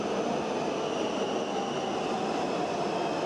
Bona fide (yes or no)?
yes